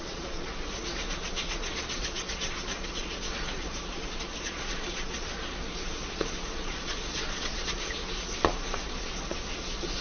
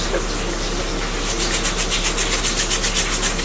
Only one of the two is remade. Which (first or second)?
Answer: first